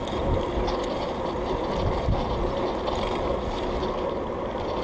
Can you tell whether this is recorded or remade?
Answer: recorded